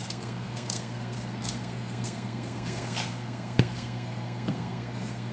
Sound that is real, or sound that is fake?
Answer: fake